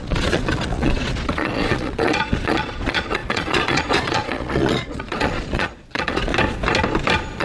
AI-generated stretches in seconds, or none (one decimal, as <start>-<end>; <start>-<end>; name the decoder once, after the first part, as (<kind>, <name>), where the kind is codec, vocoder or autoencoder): 0.0-6.3 (vocoder, Vocos)